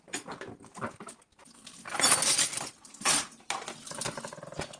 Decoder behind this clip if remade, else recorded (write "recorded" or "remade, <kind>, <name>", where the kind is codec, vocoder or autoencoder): recorded